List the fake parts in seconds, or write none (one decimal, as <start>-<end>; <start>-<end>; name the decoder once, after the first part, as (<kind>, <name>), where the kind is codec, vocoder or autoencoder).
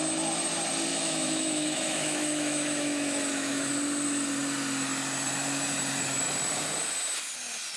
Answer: 0.9-3.7 (autoencoder, DAC-VAE)